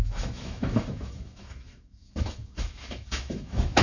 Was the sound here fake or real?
fake